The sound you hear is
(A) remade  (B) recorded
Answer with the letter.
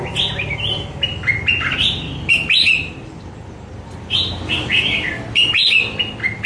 B